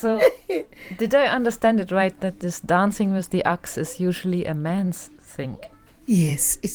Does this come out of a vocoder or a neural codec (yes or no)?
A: yes